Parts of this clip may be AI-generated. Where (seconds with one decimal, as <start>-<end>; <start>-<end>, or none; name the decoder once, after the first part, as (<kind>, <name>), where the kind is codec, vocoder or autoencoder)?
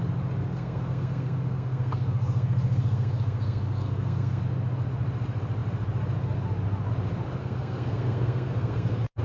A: 0.5-4.4 (codec, SNAC); 7.4-9.2